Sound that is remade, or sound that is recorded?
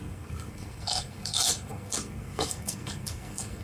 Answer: remade